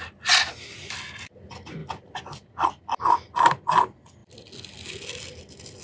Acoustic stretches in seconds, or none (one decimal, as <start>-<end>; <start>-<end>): 0.0-5.8